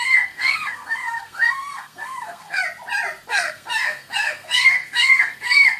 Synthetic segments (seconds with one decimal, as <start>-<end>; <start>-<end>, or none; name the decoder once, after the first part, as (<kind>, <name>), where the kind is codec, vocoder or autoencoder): 0.0-2.6 (codec, SNAC); 3.3-5.8